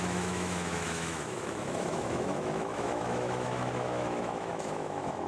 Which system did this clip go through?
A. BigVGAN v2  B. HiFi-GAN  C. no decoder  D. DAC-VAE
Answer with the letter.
D